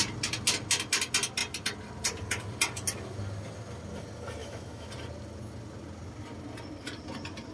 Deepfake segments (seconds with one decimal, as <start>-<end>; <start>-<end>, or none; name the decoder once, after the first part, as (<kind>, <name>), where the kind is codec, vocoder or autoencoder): 4.4-4.9 (autoencoder, DAC-VAE)